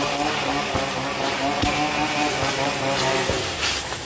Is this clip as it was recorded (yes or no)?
yes